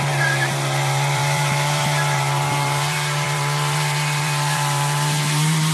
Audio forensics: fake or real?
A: fake